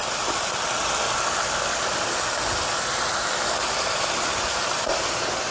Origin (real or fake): real